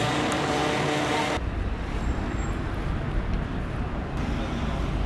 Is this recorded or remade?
recorded